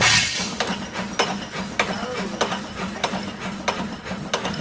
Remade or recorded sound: recorded